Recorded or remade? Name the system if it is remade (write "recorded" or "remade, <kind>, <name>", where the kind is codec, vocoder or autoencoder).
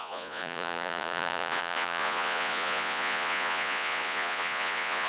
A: remade, vocoder, Vocos